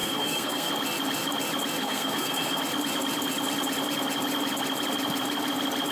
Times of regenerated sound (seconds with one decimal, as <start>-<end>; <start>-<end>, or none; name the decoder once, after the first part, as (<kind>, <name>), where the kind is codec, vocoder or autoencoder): 0.0-0.7 (codec, SNAC); 1.8-2.6